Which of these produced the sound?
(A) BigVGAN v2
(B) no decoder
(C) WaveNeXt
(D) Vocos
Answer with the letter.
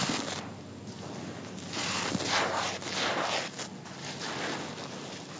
B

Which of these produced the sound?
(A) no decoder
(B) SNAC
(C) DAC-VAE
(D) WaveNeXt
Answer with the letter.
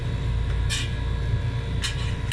A